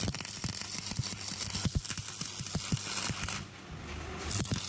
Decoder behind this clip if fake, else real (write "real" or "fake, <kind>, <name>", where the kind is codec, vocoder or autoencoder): real